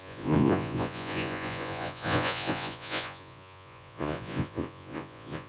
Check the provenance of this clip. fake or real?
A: fake